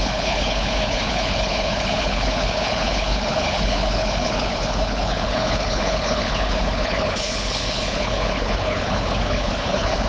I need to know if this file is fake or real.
fake